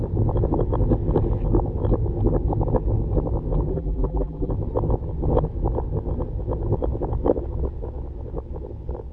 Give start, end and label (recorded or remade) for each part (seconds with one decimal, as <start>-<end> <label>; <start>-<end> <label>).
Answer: 0.0-3.7 recorded; 3.7-4.5 remade; 4.5-9.1 recorded